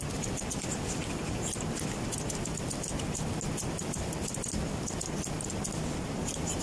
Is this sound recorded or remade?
recorded